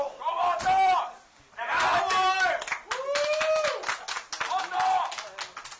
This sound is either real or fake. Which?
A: real